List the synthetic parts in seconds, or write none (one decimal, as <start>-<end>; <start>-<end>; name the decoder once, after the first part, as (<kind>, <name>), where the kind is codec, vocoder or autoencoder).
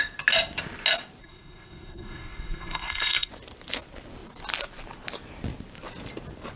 1.2-3.3 (codec, SNAC)